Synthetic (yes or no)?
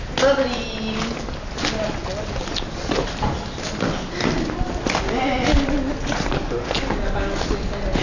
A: no